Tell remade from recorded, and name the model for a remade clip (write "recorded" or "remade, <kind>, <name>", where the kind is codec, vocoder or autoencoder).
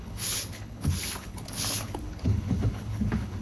remade, codec, HILCodec